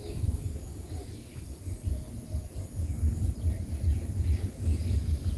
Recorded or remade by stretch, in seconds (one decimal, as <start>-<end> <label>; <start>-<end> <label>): 0.0-1.3 remade; 1.3-4.5 recorded; 4.5-5.4 remade

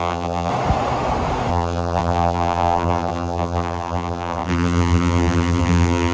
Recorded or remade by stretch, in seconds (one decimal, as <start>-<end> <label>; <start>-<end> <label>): 0.0-0.5 remade; 0.5-1.5 recorded; 1.5-6.1 remade

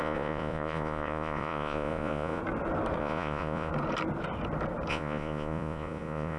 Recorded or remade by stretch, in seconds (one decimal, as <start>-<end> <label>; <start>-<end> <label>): 0.0-2.4 remade; 2.4-3.0 recorded; 3.0-3.7 remade; 3.7-4.9 recorded; 4.9-6.4 remade

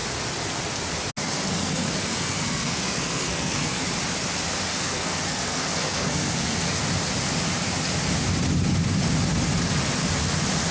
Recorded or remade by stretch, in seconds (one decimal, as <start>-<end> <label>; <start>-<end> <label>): 0.0-1.5 recorded; 1.5-3.8 remade; 3.8-4.7 recorded; 4.7-6.8 remade; 6.8-10.7 recorded

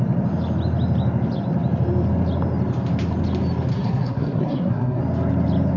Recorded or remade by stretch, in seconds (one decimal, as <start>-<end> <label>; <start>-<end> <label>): 0.0-3.7 recorded; 3.7-5.0 remade; 5.0-5.8 recorded

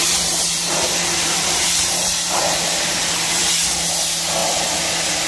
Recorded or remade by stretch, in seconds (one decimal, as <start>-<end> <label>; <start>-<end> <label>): 0.0-2.7 remade; 2.7-5.3 recorded